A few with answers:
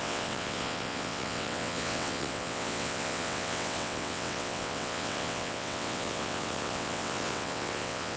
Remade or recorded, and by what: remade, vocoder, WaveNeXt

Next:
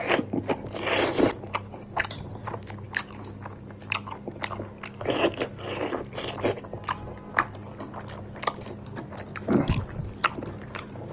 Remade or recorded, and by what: recorded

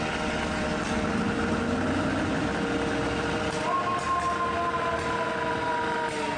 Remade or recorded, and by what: recorded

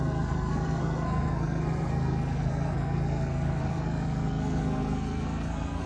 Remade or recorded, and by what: remade, codec, SNAC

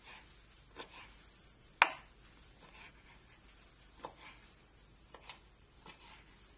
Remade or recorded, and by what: recorded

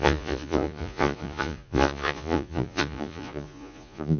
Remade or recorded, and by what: remade, vocoder, Vocos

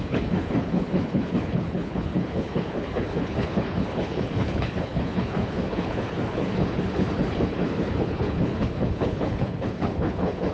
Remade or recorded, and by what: remade, codec, HILCodec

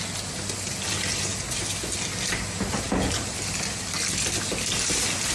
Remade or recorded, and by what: recorded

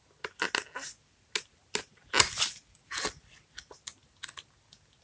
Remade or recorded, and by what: recorded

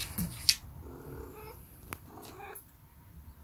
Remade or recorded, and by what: recorded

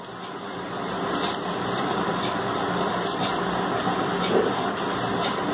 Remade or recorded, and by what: recorded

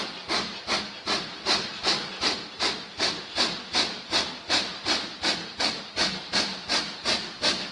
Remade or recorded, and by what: recorded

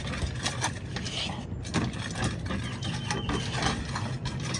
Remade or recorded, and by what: recorded